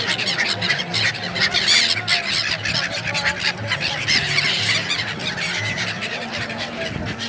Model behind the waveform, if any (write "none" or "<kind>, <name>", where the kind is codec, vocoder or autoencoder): none